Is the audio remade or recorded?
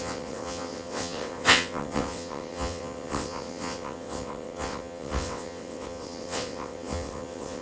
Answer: remade